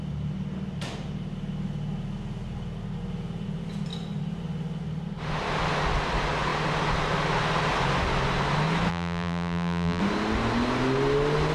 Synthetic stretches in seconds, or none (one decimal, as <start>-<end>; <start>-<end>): 8.9-10.0